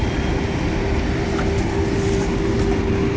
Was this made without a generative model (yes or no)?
yes